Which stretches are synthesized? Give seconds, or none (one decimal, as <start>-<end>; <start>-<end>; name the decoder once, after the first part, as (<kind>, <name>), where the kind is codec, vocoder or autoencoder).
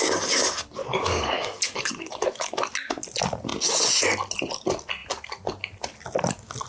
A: 0.8-2.7 (codec, DAC)